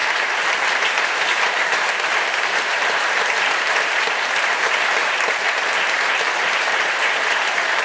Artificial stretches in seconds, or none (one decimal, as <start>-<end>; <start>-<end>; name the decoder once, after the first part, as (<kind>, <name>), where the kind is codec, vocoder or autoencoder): 0.0-5.0 (vocoder, BigVGAN v2); 5.5-7.8